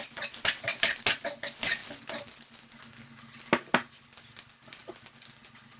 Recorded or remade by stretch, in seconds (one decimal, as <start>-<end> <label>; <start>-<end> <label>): 0.0-1.8 recorded; 1.8-2.7 remade; 2.7-3.7 recorded; 3.7-4.8 remade; 4.8-5.8 recorded